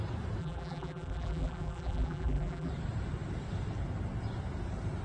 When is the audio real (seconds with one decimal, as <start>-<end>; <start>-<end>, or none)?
0.0-0.4; 2.7-5.0